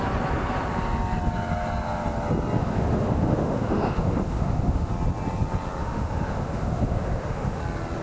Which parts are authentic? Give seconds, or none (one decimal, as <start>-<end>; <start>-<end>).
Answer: 0.0-2.6; 4.9-5.8; 7.6-8.0